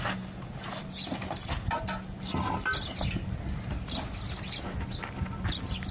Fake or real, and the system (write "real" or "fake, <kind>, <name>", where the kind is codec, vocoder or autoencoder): real